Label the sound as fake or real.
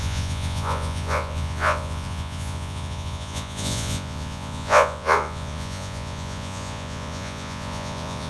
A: fake